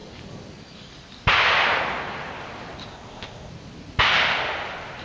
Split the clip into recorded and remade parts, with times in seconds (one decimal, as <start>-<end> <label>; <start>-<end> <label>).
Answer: 0.0-2.9 recorded; 2.9-3.5 remade; 3.5-5.0 recorded